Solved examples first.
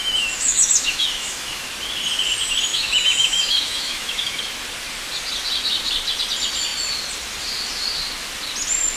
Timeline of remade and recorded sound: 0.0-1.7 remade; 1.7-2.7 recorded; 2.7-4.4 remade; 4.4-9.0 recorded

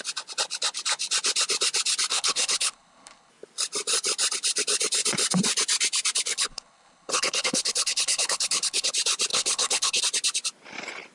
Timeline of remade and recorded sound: 0.0-2.1 recorded; 2.1-3.3 remade; 3.3-6.3 recorded; 6.3-8.9 remade; 8.9-9.3 recorded; 9.3-10.0 remade; 10.0-11.1 recorded

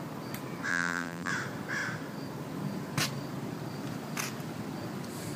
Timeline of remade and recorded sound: 0.0-0.7 recorded; 0.7-1.3 remade; 1.3-5.4 recorded

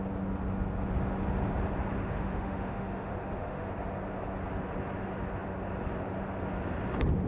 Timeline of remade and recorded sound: 0.0-2.0 recorded; 2.0-3.7 remade; 3.7-7.3 recorded

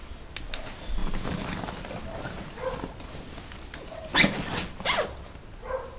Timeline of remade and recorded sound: 0.0-6.0 recorded

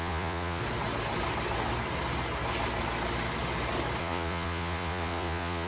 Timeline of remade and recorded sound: 0.0-0.6 remade; 0.6-4.0 recorded; 4.0-5.7 remade